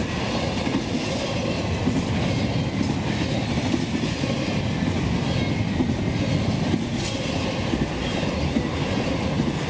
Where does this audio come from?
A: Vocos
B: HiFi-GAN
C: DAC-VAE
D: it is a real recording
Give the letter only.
D